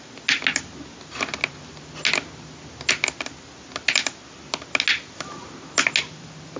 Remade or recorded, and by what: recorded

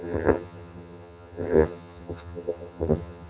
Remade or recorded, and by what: remade, vocoder, HiFi-GAN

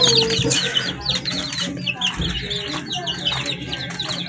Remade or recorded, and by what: recorded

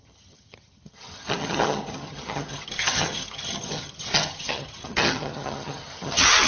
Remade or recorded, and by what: remade, vocoder, HiFi-GAN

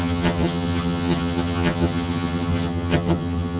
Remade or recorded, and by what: remade, vocoder, HiFi-GAN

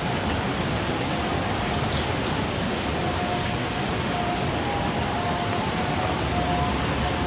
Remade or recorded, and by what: recorded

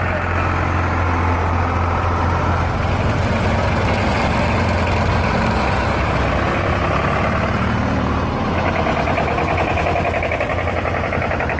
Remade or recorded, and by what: recorded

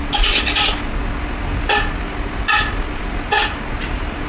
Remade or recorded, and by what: recorded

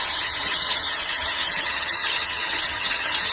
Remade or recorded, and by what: remade, vocoder, HiFi-GAN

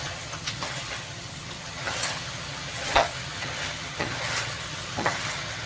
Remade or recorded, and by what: remade, vocoder, HiFi-GAN